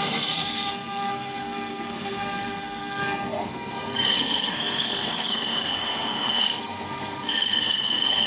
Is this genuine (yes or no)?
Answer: no